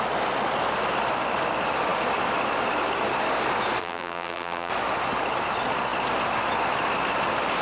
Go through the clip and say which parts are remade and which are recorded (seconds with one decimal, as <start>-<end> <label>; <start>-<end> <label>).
0.0-3.8 recorded; 3.8-4.7 remade; 4.7-7.6 recorded